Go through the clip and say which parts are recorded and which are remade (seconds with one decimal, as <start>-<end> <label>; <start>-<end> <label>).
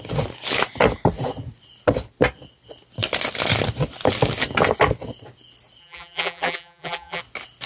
0.0-5.8 recorded; 5.8-7.2 remade; 7.2-7.7 recorded